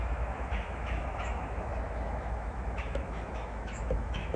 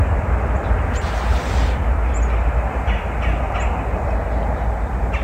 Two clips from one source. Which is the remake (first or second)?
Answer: first